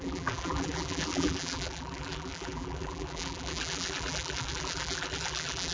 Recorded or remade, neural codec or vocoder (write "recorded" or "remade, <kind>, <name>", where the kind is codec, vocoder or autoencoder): remade, vocoder, BigVGAN v2